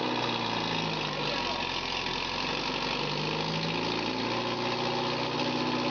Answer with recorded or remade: recorded